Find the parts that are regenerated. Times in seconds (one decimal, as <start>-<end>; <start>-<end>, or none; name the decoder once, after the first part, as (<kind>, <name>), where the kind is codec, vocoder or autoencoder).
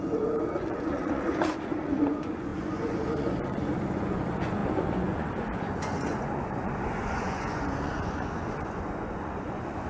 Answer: 0.0-9.9 (vocoder, Vocos)